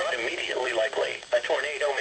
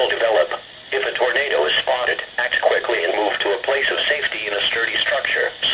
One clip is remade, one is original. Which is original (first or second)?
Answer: second